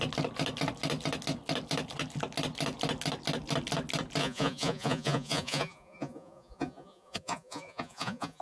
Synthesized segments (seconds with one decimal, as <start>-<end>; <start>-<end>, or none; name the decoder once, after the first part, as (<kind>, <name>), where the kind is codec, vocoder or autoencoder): 4.2-8.4 (vocoder, Vocos)

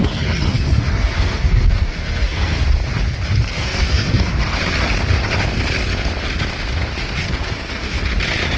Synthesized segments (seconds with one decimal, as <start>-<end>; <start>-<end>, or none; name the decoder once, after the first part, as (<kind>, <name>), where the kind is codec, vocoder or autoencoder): 0.5-2.6 (codec, SNAC); 3.5-4.3; 7.2-8.1

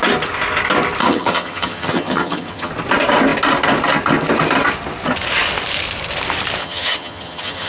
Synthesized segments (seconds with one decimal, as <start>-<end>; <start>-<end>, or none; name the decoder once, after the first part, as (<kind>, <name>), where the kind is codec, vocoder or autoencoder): 1.0-2.7 (vocoder, HiFi-GAN); 6.6-7.7

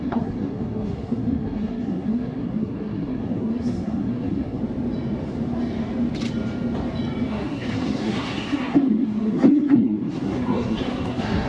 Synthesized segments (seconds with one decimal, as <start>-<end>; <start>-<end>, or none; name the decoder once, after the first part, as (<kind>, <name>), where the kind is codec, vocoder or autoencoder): 0.0-4.6 (codec, SNAC); 7.3-11.5

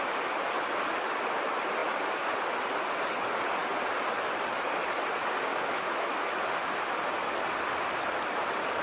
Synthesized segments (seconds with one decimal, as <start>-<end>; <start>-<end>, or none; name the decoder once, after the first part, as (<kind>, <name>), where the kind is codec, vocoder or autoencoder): 5.5-6.3 (autoencoder, DAC-VAE)